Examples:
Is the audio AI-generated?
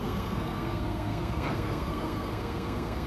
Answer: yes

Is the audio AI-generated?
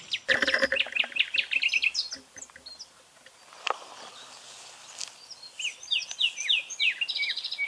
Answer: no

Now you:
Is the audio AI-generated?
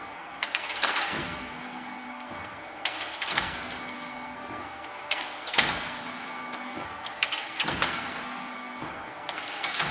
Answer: yes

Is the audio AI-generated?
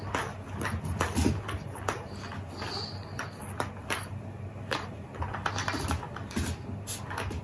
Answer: no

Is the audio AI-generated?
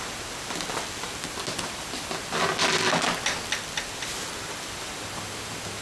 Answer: no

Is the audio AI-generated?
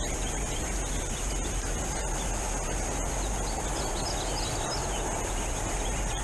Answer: no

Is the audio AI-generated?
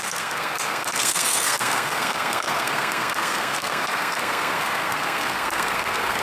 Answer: yes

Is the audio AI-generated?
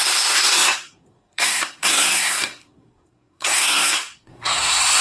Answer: yes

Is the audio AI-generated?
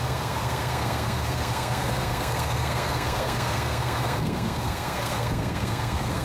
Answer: yes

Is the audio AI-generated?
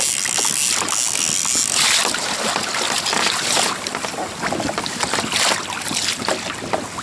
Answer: no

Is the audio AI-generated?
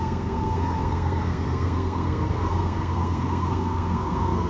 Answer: yes